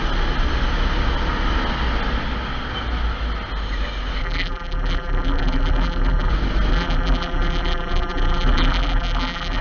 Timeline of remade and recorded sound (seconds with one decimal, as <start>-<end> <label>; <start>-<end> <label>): 0.0-4.2 recorded; 4.2-6.3 remade; 6.3-6.7 recorded; 6.7-9.6 remade